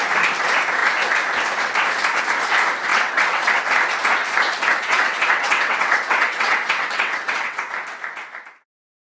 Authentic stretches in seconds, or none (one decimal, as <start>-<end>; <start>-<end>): 0.0-2.9; 3.6-4.7; 7.6-9.0